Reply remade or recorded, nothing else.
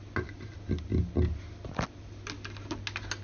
recorded